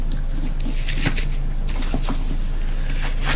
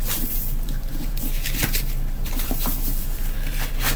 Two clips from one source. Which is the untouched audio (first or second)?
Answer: first